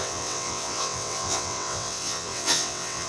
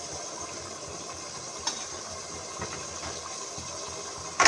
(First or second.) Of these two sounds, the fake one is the first